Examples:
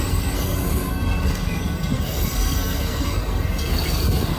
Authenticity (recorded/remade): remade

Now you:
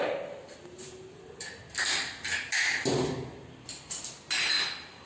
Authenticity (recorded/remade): recorded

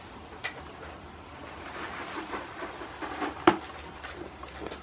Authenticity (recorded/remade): recorded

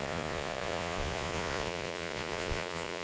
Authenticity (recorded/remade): remade